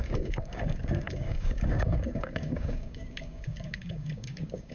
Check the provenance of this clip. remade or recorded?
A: remade